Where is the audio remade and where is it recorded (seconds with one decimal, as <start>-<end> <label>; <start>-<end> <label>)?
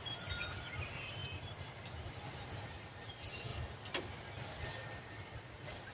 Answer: 0.0-3.5 remade; 3.5-5.0 recorded; 5.0-5.9 remade